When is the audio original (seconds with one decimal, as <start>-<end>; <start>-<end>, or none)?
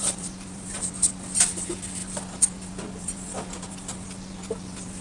0.8-5.0